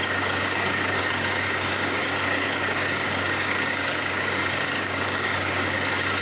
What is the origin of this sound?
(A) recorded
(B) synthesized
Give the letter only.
B